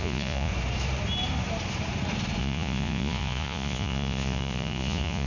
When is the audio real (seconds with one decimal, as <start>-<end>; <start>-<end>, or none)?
0.5-2.4